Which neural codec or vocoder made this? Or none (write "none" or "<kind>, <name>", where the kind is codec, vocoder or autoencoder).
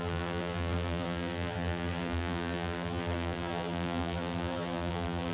vocoder, BigVGAN v2